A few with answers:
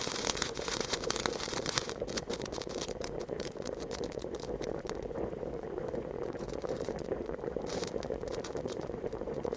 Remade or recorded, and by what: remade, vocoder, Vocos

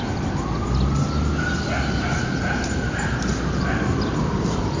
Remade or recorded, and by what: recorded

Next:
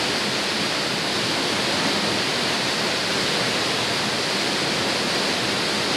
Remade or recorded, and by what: recorded